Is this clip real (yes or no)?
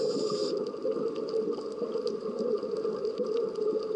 yes